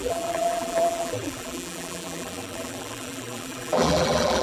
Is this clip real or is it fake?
fake